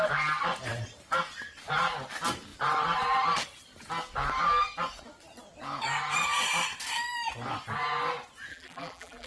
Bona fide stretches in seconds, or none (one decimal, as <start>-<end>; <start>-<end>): 0.0-8.5